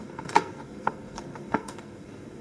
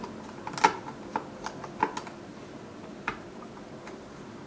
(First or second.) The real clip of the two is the second